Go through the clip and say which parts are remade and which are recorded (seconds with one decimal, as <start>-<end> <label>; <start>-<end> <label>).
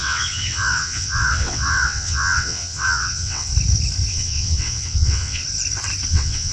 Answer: 0.0-3.5 remade; 3.5-4.1 recorded; 4.1-5.4 remade; 5.4-6.1 recorded; 6.1-6.5 remade